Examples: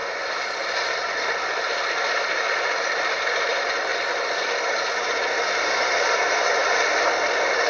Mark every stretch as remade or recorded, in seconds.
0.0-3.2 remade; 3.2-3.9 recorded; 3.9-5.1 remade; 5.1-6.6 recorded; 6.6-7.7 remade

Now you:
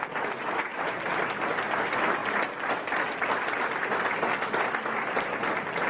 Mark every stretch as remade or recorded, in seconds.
0.0-0.7 recorded; 0.7-1.8 remade; 1.8-5.9 recorded

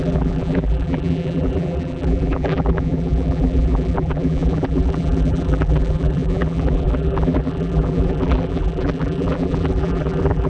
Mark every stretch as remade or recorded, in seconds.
0.0-10.5 remade

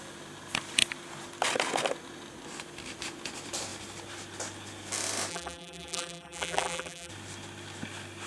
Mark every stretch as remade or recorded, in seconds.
0.0-5.3 recorded; 5.3-7.1 remade; 7.1-8.3 recorded

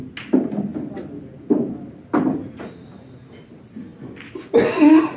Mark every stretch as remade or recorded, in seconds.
0.0-5.2 recorded

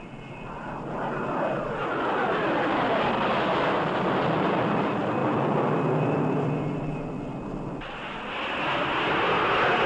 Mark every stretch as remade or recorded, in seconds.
0.0-9.9 recorded